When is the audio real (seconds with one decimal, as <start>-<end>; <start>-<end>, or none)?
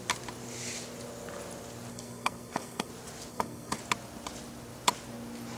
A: 0.0-1.9; 2.9-3.3; 3.8-5.6